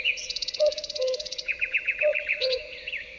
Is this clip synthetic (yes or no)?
yes